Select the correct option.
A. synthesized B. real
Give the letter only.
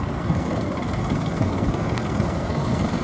A